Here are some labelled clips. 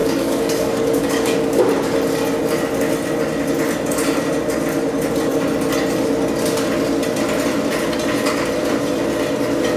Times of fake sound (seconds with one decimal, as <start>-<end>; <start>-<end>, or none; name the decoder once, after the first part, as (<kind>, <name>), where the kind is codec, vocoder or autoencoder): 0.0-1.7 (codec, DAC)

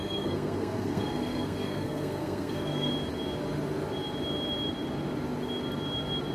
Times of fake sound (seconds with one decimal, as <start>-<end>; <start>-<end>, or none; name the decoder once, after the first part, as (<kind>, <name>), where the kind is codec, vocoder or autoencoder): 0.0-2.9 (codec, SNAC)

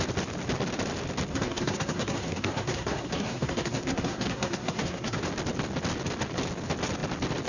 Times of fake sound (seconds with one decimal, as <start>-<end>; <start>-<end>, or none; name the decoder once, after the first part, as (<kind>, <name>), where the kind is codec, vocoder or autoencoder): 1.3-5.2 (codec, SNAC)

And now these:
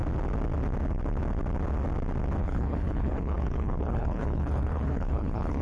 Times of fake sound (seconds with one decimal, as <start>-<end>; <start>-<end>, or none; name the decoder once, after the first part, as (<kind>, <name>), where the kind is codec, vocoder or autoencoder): 2.4-5.6 (codec, HILCodec)